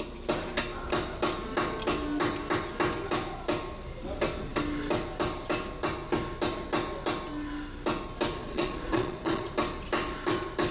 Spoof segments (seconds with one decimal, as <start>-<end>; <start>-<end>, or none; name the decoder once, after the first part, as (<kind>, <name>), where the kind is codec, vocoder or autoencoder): 8.4-9.5 (vocoder, Vocos)